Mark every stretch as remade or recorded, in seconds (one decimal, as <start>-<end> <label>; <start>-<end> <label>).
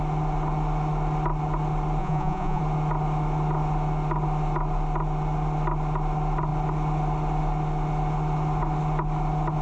0.0-2.0 recorded; 2.0-2.6 remade; 2.6-9.6 recorded